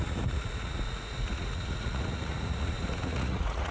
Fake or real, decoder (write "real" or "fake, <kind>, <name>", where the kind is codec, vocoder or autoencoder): fake, vocoder, Vocos